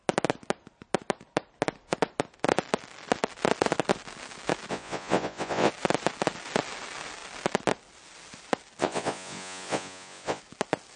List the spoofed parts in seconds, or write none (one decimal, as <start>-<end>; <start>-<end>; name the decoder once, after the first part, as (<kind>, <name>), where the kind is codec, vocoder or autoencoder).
4.7-5.7 (vocoder, Vocos); 8.8-10.4